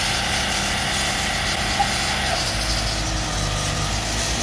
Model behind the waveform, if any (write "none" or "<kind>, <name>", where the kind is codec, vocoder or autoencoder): none